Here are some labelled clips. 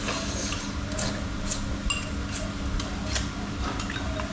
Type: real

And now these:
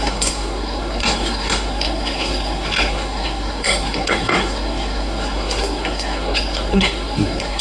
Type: fake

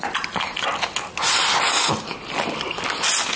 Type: real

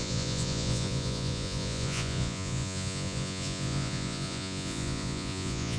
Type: fake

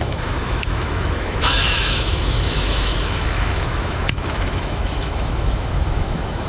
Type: fake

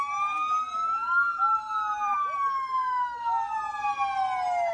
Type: real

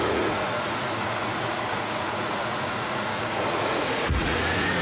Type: fake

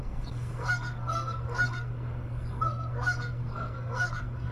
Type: fake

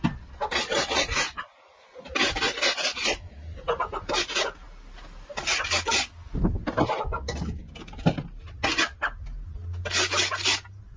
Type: real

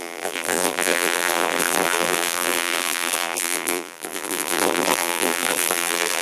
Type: fake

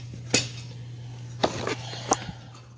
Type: real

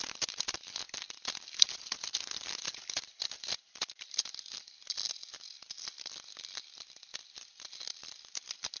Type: real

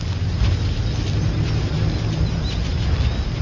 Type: real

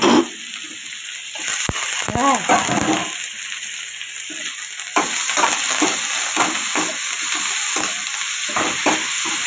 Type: real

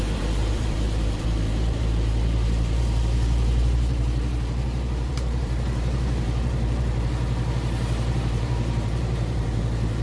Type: fake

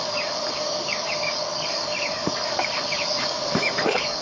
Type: fake